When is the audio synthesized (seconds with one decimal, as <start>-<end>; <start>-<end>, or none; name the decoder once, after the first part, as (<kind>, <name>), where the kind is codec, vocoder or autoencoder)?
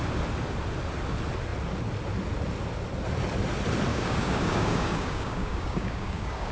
3.9-6.5 (codec, DAC)